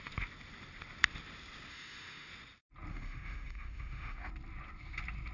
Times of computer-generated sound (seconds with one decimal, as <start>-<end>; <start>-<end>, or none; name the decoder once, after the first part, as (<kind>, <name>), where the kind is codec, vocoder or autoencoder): 1.7-2.3 (autoencoder, DAC-VAE); 2.9-4.3